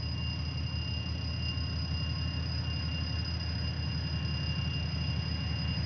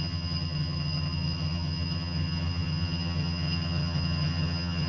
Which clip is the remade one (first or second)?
second